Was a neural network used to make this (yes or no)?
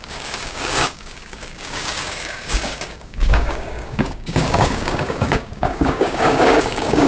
yes